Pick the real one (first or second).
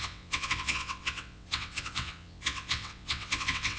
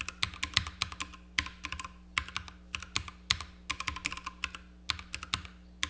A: second